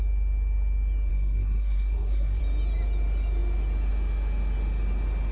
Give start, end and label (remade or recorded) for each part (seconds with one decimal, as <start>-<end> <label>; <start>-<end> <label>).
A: 0.0-1.1 recorded; 1.1-2.4 remade; 2.4-5.3 recorded